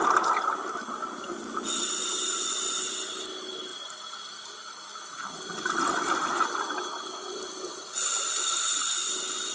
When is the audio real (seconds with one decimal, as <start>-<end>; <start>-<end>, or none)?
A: 0.0-9.5